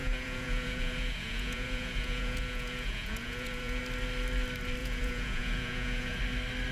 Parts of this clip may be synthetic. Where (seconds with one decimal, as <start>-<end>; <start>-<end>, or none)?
0.0-3.8; 4.8-6.2